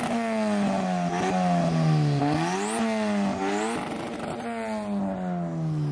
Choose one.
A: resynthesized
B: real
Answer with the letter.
B